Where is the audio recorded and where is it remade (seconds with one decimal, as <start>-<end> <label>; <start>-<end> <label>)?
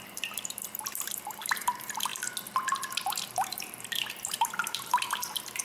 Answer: 0.0-2.1 remade; 2.1-3.2 recorded; 3.2-5.6 remade